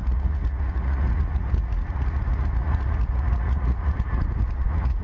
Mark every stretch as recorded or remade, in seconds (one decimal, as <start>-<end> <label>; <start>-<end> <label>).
0.0-5.0 remade